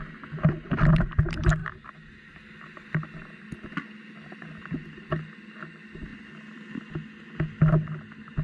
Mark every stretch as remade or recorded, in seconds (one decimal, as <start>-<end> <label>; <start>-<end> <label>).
0.0-8.4 recorded